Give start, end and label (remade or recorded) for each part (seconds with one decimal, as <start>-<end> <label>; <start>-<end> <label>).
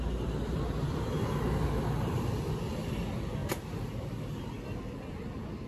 0.0-5.7 recorded